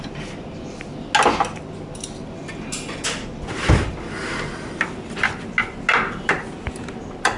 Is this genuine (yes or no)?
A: yes